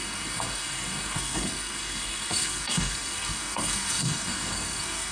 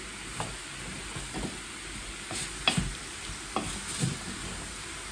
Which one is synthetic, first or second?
first